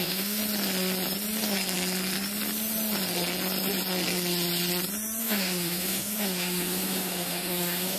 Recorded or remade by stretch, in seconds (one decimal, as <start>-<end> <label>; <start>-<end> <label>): 0.0-0.4 remade; 0.4-5.2 recorded; 5.2-8.0 remade